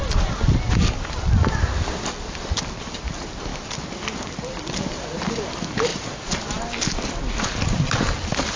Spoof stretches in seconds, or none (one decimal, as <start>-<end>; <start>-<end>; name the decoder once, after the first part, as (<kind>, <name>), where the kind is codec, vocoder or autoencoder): none